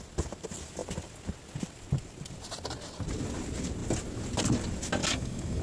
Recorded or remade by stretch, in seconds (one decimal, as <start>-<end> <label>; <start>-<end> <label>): 0.0-5.0 recorded; 5.0-5.6 remade